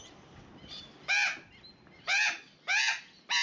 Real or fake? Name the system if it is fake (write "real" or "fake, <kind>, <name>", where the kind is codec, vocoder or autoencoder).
real